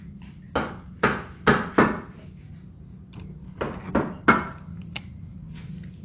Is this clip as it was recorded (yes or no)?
yes